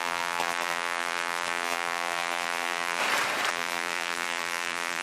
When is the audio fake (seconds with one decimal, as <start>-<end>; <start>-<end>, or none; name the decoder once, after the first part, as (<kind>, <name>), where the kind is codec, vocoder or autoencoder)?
0.0-3.0 (vocoder, BigVGAN v2); 3.5-5.0